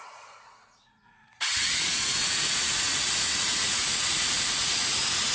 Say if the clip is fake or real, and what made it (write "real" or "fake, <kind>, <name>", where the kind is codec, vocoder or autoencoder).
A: fake, vocoder, Vocos